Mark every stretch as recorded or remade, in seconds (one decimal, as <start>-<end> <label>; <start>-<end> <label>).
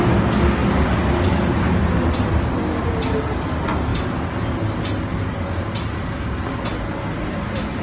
0.0-7.8 recorded